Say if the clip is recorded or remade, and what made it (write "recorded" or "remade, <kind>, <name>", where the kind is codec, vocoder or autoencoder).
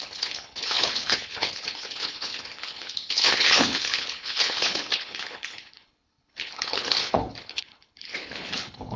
remade, codec, HILCodec